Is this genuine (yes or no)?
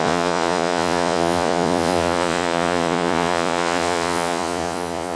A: no